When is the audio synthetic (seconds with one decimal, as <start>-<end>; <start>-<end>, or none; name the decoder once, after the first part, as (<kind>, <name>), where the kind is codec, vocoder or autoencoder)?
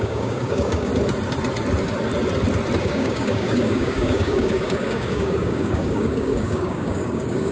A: 0.0-0.9 (codec, DAC); 2.8-7.5